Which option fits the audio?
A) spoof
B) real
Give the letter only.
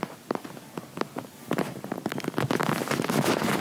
B